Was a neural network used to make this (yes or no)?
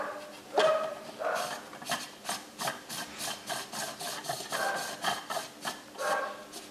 no